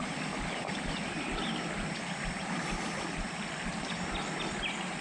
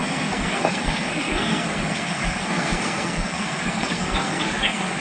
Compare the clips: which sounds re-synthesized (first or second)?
second